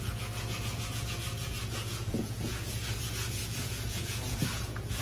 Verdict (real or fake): fake